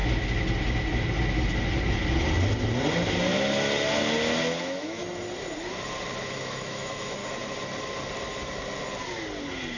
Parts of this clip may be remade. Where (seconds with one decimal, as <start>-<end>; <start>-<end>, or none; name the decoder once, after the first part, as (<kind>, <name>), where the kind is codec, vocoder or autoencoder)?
4.6-5.0 (autoencoder, DAC-VAE); 6.2-7.2